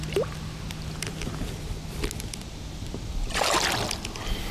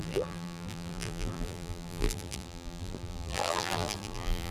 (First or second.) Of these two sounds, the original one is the first